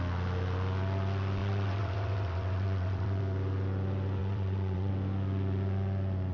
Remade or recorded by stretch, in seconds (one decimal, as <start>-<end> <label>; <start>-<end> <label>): 0.0-1.4 recorded; 1.4-3.2 remade; 3.2-4.2 recorded; 4.2-4.9 remade; 4.9-6.3 recorded